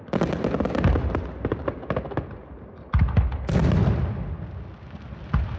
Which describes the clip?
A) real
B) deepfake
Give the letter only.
A